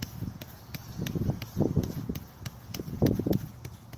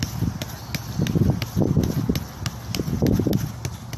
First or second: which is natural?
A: second